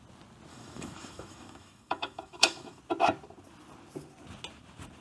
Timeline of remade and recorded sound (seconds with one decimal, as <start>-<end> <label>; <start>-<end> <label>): 0.0-0.5 recorded; 0.5-2.8 remade; 2.8-5.0 recorded